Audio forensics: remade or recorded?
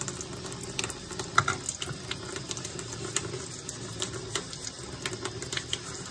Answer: recorded